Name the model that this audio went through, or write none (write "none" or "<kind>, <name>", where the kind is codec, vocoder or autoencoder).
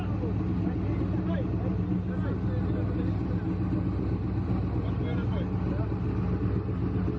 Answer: none